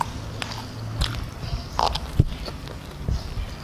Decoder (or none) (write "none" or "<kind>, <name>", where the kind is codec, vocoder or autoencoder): none